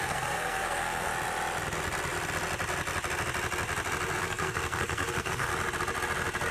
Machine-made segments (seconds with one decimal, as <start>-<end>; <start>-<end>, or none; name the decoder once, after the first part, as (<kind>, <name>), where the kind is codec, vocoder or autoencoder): 0.0-1.1 (codec, SNAC); 4.2-5.5